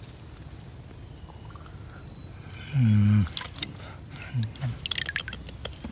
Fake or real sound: real